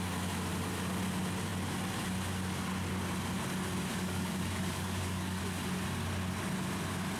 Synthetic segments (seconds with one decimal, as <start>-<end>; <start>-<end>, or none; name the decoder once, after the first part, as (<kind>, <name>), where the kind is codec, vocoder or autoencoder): 3.9-5.4 (codec, DAC)